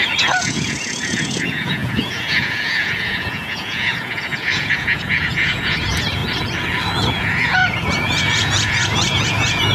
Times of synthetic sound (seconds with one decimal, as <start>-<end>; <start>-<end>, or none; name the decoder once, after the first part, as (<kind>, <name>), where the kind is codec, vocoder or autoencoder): 0.0-6.2 (vocoder, Vocos); 7.1-9.7